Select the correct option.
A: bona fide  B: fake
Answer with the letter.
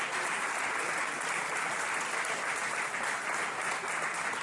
A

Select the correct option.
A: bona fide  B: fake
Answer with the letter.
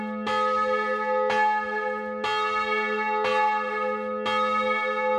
A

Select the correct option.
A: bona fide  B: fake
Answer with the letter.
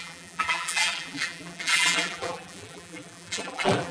B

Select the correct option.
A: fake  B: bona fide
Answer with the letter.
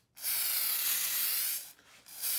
B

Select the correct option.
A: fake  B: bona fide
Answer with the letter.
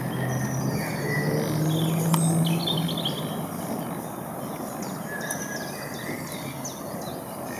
B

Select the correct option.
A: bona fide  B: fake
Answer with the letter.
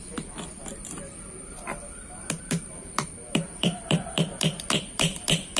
B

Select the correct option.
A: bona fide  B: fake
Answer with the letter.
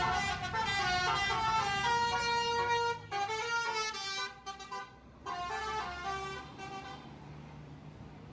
A